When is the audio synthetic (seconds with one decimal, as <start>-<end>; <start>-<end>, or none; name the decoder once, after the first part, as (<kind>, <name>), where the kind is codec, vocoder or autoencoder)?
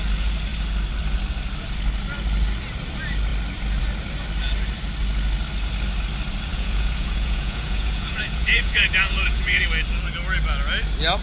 6.5-9.6 (vocoder, Vocos)